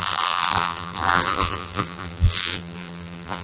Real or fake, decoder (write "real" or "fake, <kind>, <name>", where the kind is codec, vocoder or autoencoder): fake, vocoder, BigVGAN v2